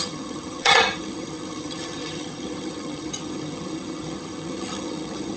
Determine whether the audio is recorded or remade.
remade